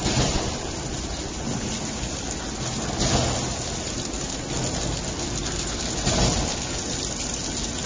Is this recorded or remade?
recorded